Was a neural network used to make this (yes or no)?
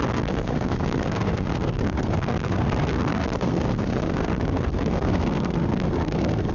yes